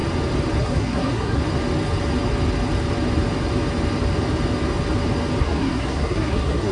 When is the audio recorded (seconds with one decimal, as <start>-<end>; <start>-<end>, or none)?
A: 0.0-0.6; 1.4-5.4